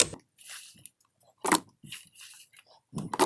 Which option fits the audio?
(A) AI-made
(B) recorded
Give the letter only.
B